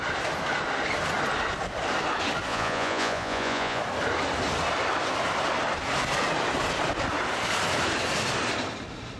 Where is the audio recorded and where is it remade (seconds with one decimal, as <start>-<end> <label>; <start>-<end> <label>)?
0.0-2.5 recorded; 2.5-3.8 remade; 3.8-9.2 recorded